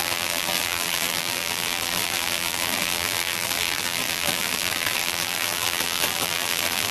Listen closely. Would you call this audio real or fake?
fake